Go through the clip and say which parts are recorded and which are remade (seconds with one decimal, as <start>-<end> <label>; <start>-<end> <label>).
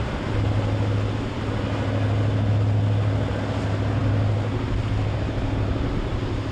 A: 0.0-6.5 recorded